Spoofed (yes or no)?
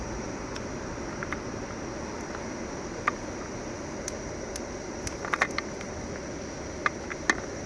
no